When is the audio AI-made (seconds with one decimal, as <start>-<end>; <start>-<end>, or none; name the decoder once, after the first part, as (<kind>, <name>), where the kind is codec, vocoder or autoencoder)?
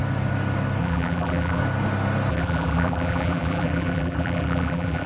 0.8-1.6 (vocoder, BigVGAN v2); 2.3-5.1